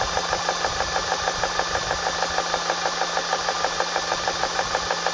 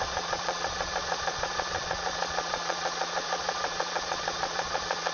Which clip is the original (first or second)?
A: first